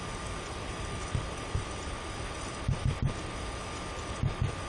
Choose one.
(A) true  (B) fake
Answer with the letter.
A